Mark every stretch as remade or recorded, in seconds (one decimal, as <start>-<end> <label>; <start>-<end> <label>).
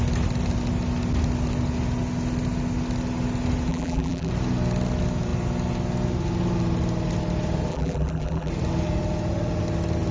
0.0-3.7 recorded; 3.7-4.3 remade; 4.3-7.7 recorded; 7.7-8.5 remade; 8.5-10.1 recorded